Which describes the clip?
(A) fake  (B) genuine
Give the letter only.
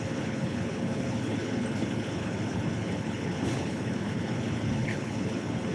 A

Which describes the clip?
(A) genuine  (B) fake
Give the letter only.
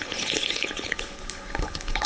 B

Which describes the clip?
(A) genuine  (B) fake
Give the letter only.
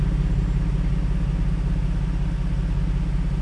A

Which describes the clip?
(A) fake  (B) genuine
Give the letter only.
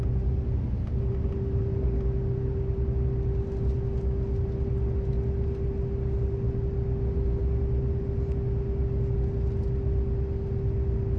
B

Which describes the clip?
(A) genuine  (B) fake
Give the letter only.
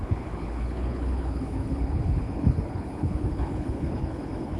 B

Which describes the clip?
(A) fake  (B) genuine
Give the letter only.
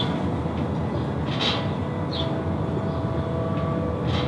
B